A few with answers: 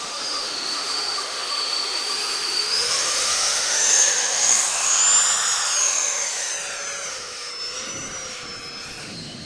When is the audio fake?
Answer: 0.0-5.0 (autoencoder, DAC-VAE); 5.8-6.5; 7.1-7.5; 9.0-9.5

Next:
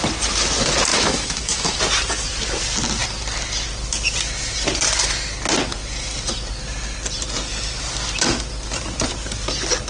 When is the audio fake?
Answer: 0.9-1.8 (autoencoder, DAC-VAE)

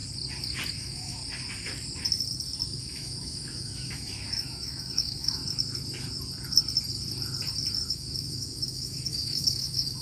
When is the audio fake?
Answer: 0.7-1.2 (autoencoder, DAC-VAE); 2.8-5.4; 7.9-10.0

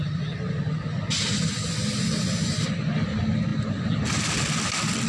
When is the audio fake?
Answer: none